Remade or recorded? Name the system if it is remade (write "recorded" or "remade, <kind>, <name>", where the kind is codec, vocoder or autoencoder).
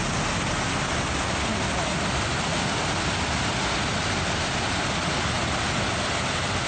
recorded